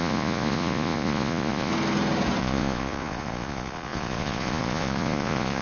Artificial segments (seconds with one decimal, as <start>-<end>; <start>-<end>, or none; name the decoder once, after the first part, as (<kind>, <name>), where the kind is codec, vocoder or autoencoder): 0.0-1.7 (vocoder, Vocos); 2.4-5.6